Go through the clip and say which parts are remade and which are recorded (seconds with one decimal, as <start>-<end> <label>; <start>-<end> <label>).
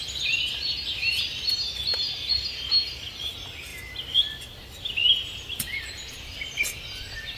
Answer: 0.0-7.4 recorded